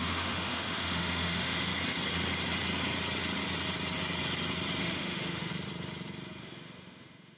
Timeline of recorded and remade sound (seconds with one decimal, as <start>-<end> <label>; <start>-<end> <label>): 0.0-1.7 remade; 1.7-4.8 recorded; 4.8-5.5 remade; 5.5-6.4 recorded; 6.4-7.4 remade